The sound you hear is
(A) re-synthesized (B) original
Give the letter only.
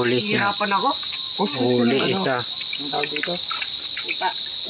B